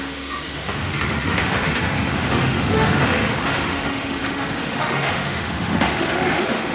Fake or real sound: fake